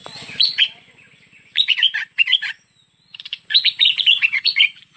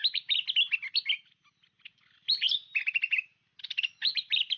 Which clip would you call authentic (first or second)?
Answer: second